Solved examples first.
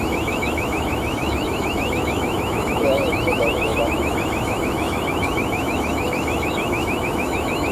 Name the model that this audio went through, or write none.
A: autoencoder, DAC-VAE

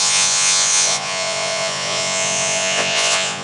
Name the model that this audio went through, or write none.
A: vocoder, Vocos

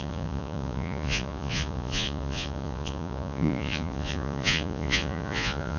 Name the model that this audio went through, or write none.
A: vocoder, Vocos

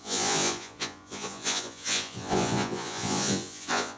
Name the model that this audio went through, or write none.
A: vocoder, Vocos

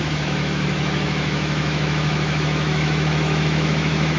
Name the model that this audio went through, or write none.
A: autoencoder, DAC-VAE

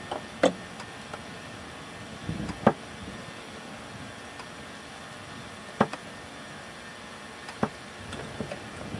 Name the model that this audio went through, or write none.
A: none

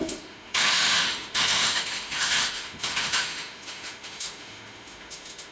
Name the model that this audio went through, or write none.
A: autoencoder, DAC-VAE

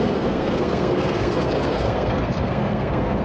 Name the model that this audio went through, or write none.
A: codec, SNAC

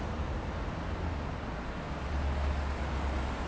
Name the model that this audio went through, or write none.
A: none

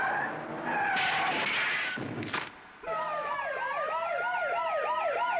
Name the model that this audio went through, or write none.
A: none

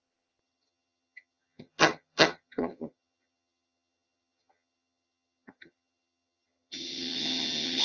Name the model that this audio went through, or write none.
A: vocoder, HiFi-GAN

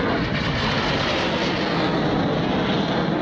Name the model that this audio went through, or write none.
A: none